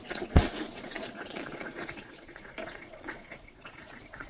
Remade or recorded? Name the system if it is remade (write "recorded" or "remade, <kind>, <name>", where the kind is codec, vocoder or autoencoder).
remade, vocoder, Vocos